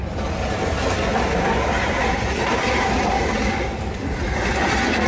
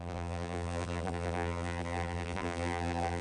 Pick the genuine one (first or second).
first